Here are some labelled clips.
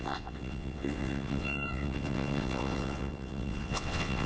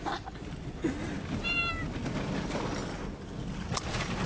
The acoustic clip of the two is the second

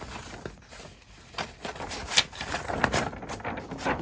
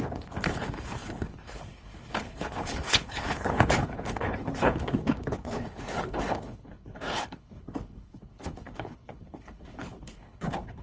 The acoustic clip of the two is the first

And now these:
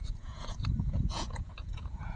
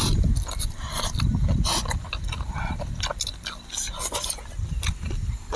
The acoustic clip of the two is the second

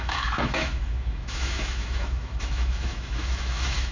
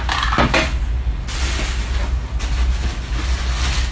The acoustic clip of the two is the second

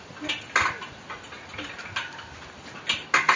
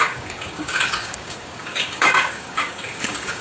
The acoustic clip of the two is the first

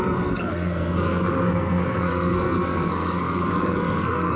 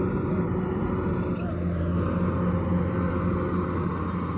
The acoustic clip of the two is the second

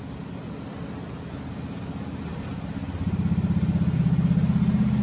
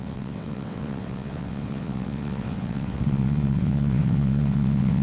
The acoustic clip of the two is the first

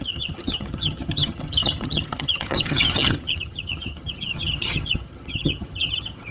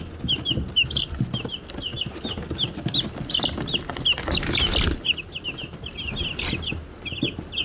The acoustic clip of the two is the second